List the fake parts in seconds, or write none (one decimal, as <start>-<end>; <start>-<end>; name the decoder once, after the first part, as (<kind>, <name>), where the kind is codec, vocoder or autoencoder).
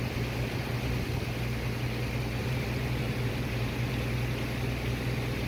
2.4-3.9 (vocoder, BigVGAN v2)